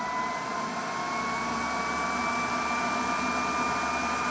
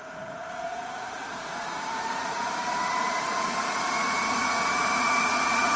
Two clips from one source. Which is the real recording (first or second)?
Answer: first